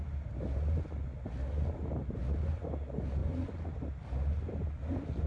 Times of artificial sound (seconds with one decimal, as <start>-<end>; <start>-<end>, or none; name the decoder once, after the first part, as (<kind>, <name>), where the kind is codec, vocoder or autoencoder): none